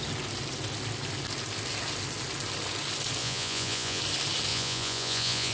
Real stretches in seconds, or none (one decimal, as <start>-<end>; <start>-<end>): 0.0-3.2; 4.0-4.5